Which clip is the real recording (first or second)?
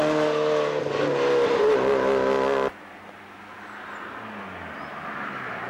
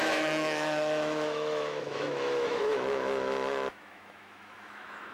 first